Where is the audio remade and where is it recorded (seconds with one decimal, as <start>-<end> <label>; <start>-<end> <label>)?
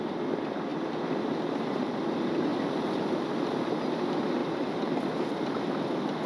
0.0-2.5 recorded; 2.5-3.5 remade; 3.5-4.4 recorded; 4.4-5.7 remade; 5.7-6.3 recorded